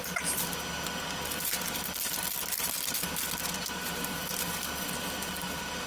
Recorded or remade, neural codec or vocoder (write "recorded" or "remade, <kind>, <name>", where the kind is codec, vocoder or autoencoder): recorded